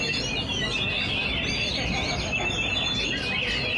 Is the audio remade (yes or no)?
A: yes